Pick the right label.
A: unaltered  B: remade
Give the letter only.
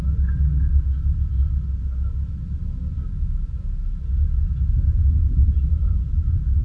A